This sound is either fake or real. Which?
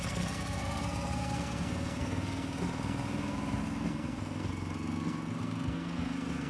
fake